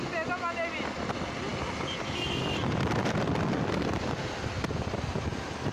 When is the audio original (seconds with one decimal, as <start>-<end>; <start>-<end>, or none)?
0.0-5.7